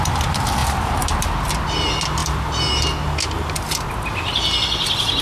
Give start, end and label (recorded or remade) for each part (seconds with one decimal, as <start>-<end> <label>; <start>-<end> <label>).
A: 0.0-0.6 recorded; 0.6-1.5 remade; 1.5-5.2 recorded